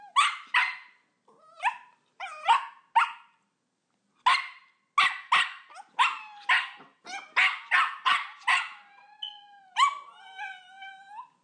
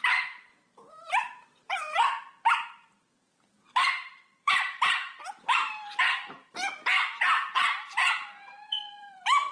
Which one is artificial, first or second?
second